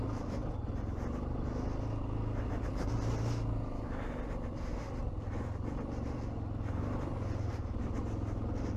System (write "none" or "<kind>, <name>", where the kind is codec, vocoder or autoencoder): none